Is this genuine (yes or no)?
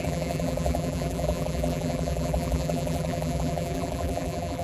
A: no